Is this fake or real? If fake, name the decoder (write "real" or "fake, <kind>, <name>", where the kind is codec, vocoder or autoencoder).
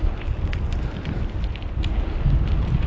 real